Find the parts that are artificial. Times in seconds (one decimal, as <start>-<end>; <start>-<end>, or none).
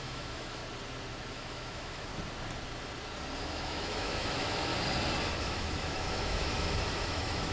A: 0.0-0.6; 1.3-2.1; 3.4-4.7; 5.4-7.5